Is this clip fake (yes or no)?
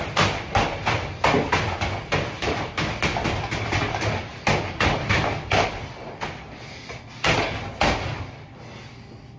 no